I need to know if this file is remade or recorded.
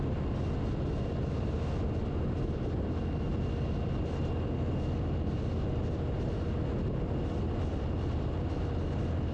recorded